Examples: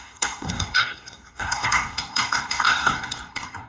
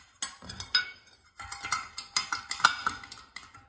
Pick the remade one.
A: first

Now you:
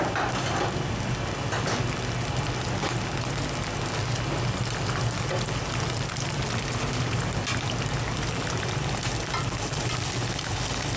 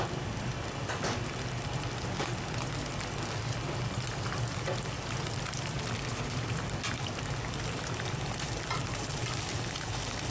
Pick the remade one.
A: second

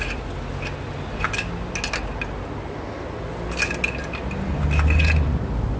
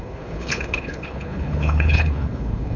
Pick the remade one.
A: second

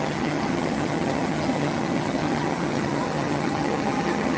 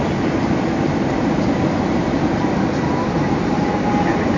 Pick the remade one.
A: first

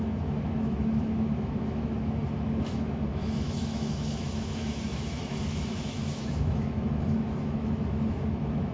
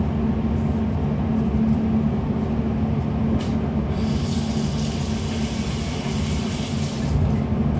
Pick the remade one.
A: first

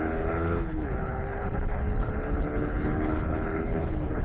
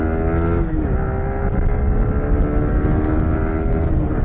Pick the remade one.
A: first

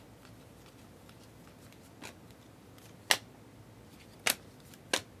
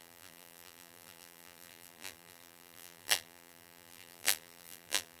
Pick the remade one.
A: second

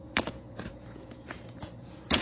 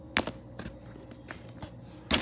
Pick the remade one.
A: first